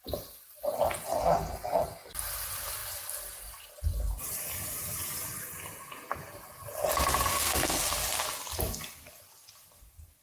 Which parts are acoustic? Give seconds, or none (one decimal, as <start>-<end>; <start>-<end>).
0.0-7.3; 7.8-10.2